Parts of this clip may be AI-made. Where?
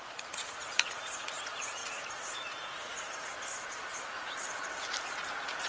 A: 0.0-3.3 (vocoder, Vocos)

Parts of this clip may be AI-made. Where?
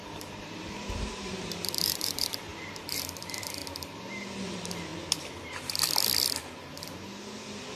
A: 0.0-3.6 (vocoder, BigVGAN v2); 4.5-4.9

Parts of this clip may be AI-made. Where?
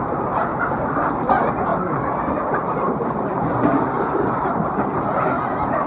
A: 0.0-0.5 (vocoder, BigVGAN v2); 1.1-5.9